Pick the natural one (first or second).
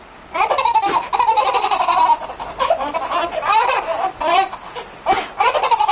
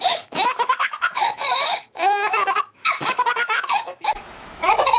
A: first